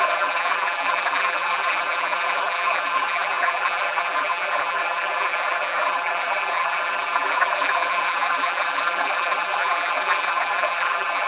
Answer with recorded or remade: remade